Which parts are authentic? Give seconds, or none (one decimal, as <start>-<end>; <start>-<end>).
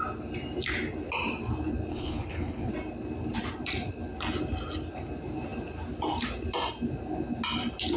0.0-1.9; 2.7-8.0